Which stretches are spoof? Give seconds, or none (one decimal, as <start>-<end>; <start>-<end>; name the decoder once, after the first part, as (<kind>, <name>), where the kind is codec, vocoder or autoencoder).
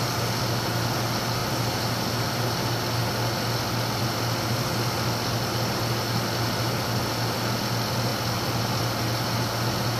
none